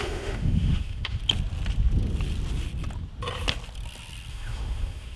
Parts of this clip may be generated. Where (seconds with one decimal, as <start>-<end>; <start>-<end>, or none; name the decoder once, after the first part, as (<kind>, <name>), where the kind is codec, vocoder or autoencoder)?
0.0-1.2 (autoencoder, DAC-VAE); 4.3-5.2